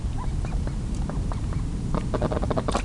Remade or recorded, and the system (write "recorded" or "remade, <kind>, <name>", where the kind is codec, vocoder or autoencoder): recorded